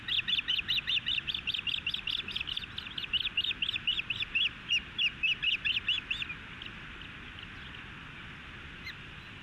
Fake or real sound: real